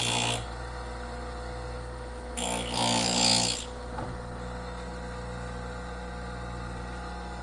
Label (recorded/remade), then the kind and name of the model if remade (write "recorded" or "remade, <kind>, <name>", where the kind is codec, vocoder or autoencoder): recorded